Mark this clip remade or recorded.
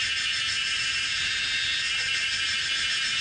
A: recorded